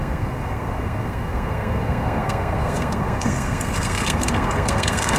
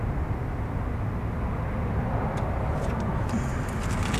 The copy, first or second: first